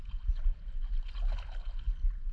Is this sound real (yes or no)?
yes